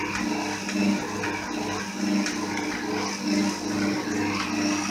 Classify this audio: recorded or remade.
recorded